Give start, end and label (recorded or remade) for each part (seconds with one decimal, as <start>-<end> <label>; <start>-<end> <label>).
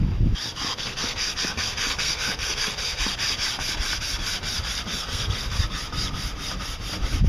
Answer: 0.0-0.7 recorded; 0.7-3.0 remade; 3.0-4.9 recorded; 4.9-5.6 remade; 5.6-7.3 recorded